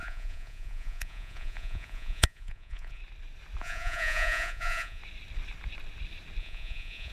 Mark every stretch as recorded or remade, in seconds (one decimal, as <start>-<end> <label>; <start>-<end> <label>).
0.0-3.0 remade; 3.0-3.6 recorded; 3.6-5.0 remade; 5.0-6.4 recorded; 6.4-7.1 remade

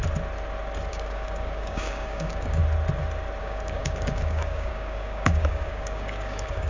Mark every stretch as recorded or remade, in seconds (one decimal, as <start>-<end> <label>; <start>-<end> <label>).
0.0-0.9 recorded; 0.9-2.6 remade; 2.6-3.4 recorded; 3.4-6.7 remade

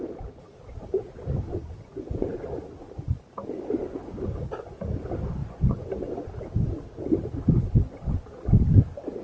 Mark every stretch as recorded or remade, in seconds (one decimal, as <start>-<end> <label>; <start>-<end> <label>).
0.0-1.5 recorded; 1.5-2.3 remade; 2.3-5.4 recorded; 5.4-6.1 remade; 6.1-9.2 recorded

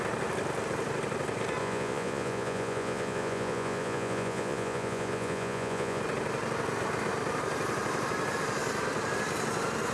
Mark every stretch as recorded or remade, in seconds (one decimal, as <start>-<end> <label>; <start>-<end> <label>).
0.0-1.6 recorded; 1.6-6.0 remade; 6.0-9.9 recorded